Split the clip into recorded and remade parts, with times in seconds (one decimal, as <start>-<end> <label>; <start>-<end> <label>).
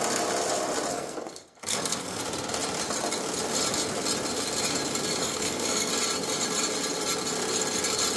0.0-0.9 recorded; 0.9-2.2 remade; 2.2-5.2 recorded; 5.2-5.9 remade; 5.9-8.2 recorded